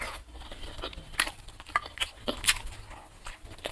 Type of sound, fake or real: real